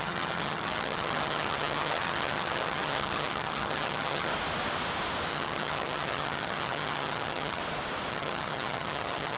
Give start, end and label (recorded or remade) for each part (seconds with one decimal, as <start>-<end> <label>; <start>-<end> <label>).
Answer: 0.0-4.3 remade; 4.3-5.3 recorded; 5.3-7.6 remade; 7.6-8.1 recorded; 8.1-9.4 remade